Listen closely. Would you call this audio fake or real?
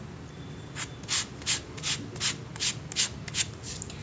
real